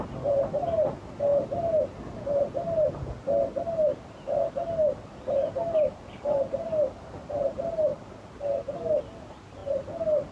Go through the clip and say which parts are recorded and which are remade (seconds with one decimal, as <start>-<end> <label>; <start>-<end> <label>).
0.0-10.3 recorded